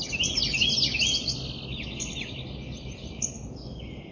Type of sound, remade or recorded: recorded